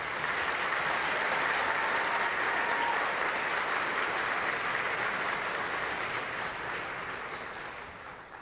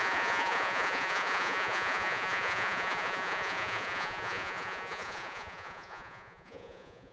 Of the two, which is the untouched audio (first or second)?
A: first